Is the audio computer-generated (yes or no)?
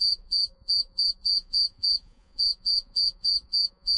yes